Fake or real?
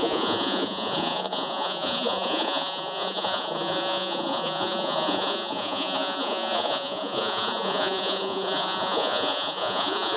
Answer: fake